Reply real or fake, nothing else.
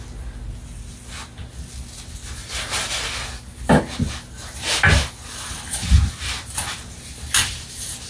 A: real